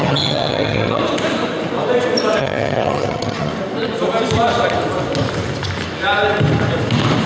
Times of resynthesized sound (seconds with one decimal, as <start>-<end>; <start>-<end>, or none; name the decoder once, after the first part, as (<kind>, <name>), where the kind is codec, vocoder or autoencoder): 0.0-1.0 (vocoder, HiFi-GAN); 2.4-3.5